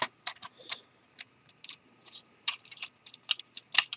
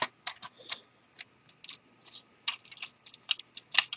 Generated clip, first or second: first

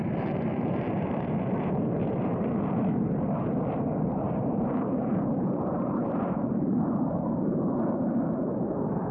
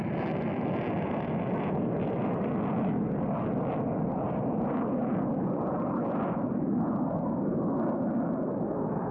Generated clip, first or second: first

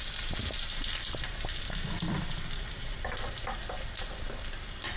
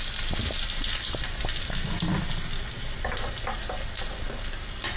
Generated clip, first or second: first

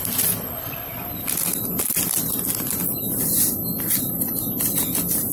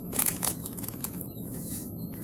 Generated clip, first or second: second